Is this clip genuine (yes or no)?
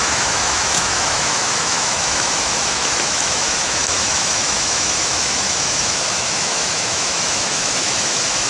no